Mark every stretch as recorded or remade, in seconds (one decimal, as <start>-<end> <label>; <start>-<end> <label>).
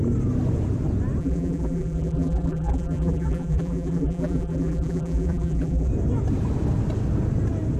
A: 0.0-1.2 recorded; 1.2-5.9 remade; 5.9-7.8 recorded